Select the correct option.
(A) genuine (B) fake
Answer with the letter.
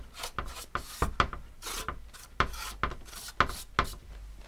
A